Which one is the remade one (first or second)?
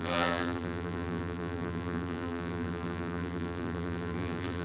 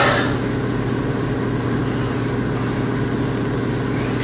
first